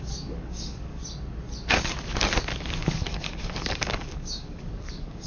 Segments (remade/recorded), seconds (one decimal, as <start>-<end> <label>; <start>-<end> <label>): 0.0-1.0 remade; 1.0-2.6 recorded; 2.6-5.3 remade